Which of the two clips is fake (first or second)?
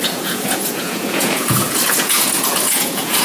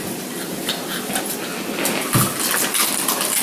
first